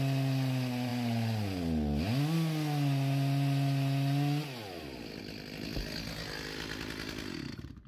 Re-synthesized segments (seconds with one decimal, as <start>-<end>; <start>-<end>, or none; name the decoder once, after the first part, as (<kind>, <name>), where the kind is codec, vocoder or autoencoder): none

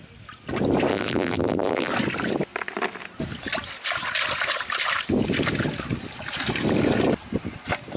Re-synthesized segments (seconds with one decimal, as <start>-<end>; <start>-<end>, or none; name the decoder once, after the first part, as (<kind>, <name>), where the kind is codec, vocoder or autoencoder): 0.9-1.9 (vocoder, BigVGAN v2)

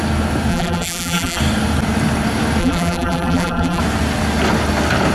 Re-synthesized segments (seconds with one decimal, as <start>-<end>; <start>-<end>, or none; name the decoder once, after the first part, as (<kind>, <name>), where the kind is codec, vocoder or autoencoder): 0.5-1.4 (vocoder, BigVGAN v2); 2.6-3.8